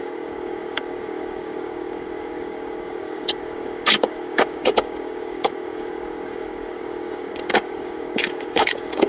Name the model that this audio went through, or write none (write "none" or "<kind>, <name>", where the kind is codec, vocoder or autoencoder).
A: codec, DAC